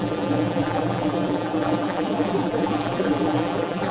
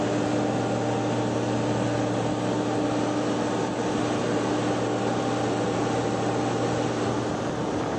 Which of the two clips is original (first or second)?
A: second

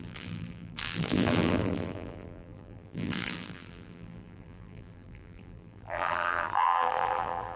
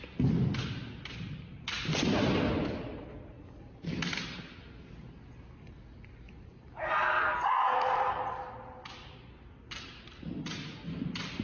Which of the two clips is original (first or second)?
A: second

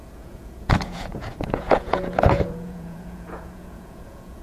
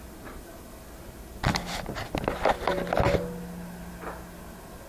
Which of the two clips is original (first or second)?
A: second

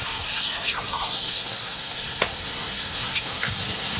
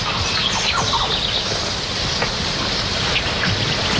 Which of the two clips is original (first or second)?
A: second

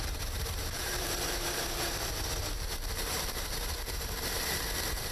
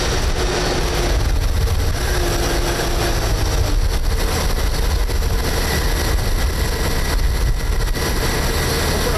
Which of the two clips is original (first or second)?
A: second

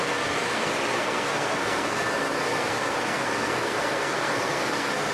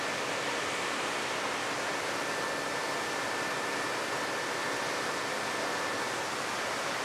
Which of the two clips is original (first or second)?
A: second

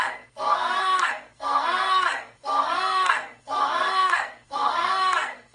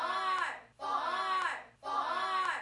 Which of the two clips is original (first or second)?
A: second